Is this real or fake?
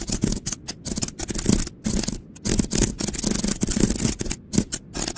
real